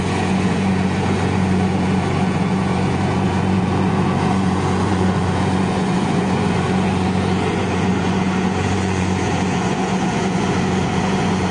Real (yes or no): no